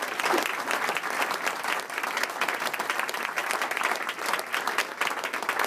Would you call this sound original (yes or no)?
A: yes